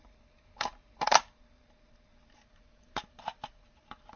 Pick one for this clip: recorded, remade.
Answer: remade